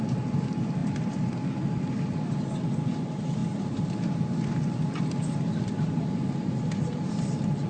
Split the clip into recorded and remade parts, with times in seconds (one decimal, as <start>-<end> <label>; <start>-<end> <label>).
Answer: 0.0-7.7 recorded